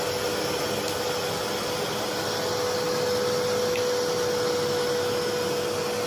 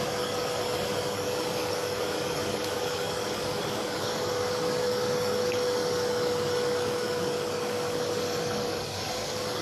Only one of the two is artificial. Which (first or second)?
second